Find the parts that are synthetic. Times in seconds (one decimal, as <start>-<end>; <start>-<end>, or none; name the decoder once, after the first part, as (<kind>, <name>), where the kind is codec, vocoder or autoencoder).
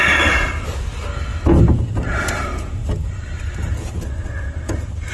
none